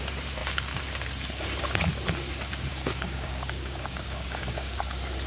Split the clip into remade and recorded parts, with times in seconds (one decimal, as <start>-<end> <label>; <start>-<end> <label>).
0.0-2.7 recorded; 2.7-4.8 remade; 4.8-5.3 recorded